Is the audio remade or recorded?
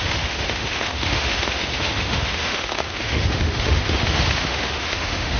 remade